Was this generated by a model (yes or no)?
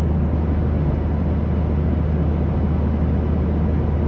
no